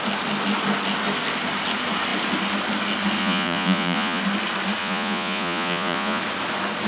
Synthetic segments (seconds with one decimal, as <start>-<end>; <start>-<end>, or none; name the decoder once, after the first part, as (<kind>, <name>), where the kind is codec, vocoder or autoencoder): 3.2-4.2 (vocoder, Vocos); 4.8-6.2